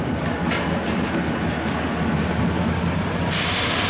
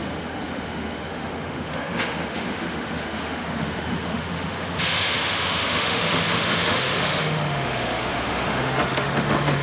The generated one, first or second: second